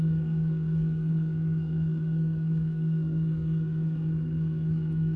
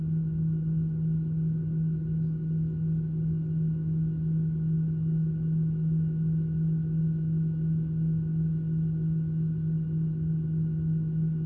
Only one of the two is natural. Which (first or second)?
second